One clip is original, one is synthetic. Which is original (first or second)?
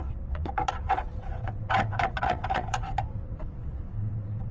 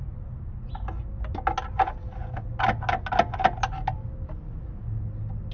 second